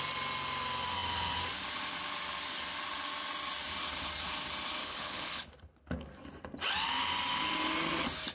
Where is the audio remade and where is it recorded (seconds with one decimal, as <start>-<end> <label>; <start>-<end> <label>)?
0.0-4.8 recorded; 4.8-5.5 remade; 5.5-8.3 recorded